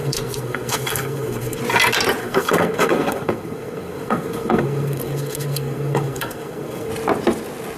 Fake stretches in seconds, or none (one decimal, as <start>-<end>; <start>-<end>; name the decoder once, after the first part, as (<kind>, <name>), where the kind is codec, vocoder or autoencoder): 0.0-1.6 (codec, SNAC); 2.2-6.9